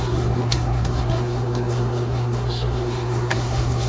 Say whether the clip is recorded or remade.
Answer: remade